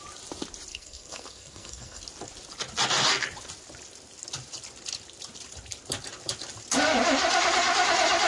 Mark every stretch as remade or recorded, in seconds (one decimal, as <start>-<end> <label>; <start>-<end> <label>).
0.0-0.7 recorded; 0.7-2.0 remade; 2.0-8.3 recorded